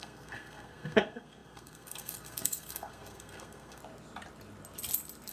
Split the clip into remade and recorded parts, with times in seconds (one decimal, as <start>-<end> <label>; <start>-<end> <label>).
0.0-3.8 remade; 3.8-5.3 recorded